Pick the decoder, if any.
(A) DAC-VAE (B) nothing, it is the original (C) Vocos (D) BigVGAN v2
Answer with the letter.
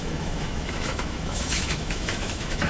A